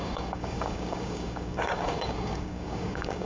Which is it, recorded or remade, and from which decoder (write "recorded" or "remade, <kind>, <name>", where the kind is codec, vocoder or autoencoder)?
remade, codec, DAC